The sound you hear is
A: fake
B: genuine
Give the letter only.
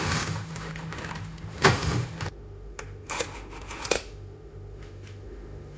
A